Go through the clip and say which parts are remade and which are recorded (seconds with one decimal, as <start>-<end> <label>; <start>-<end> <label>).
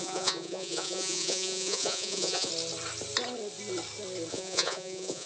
0.0-2.5 remade; 2.5-4.3 recorded; 4.3-5.3 remade